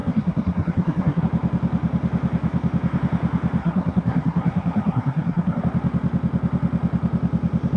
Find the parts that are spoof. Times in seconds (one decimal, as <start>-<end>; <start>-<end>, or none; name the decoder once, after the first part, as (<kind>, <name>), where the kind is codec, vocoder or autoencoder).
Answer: 0.0-1.2 (codec, SNAC); 3.6-5.6